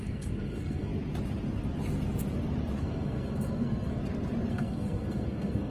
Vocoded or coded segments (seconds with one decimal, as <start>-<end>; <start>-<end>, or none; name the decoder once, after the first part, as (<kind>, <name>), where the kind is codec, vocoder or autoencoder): 0.0-0.9 (codec, SNAC); 2.8-4.0; 4.5-5.7